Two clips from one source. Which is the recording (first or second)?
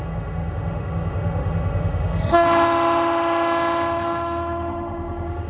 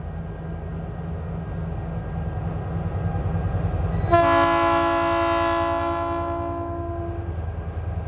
second